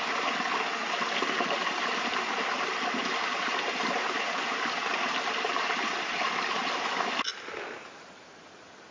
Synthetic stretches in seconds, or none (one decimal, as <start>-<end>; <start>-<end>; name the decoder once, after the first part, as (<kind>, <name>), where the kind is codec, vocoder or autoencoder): 0.8-1.9 (vocoder, BigVGAN v2); 3.0-6.6